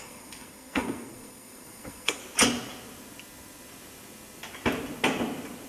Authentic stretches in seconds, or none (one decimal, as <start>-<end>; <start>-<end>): 2.2-5.7